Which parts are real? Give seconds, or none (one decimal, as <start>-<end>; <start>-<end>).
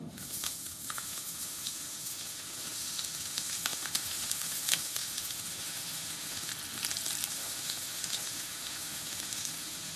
6.5-7.3